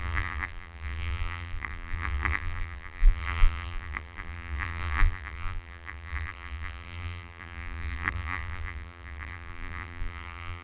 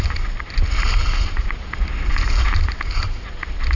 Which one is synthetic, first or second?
first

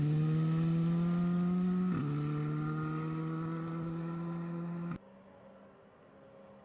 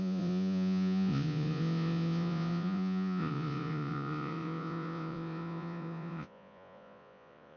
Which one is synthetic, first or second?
second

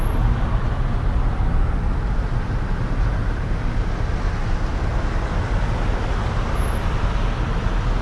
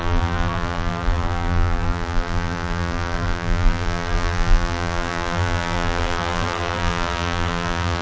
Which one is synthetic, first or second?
second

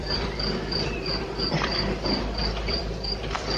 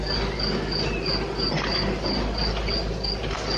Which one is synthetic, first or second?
first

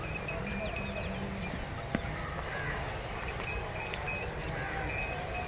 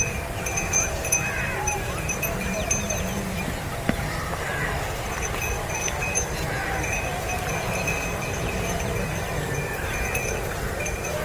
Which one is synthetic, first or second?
second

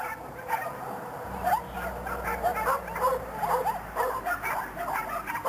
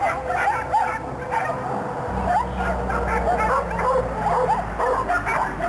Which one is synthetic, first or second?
first